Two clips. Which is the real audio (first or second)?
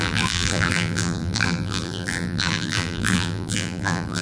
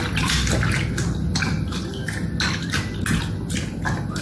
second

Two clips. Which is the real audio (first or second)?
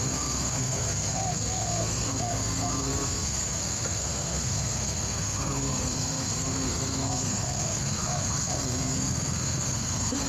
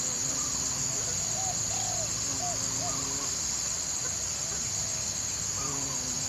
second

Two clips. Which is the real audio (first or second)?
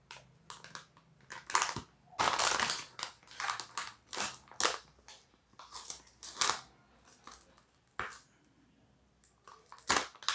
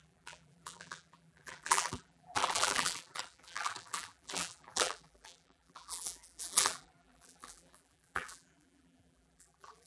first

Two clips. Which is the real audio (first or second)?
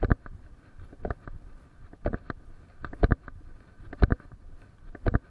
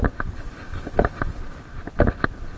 second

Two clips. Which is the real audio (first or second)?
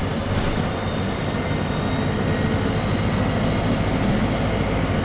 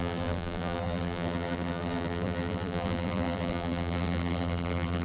first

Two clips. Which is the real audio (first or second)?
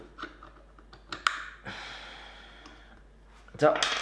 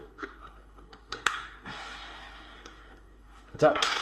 first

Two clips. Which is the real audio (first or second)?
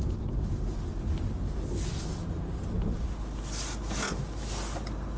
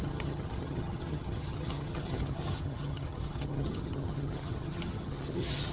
first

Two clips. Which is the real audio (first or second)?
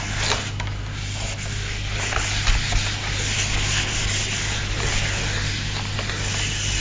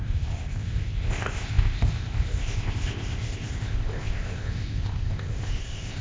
first